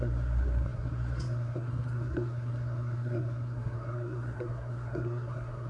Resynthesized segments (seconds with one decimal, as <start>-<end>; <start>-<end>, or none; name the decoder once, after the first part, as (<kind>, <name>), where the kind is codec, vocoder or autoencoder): 0.0-5.7 (codec, SNAC)